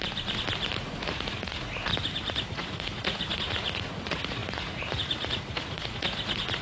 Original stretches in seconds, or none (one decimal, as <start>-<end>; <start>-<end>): 0.0-0.8; 1.9-2.5